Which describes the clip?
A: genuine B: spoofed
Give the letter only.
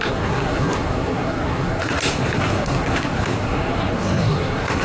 B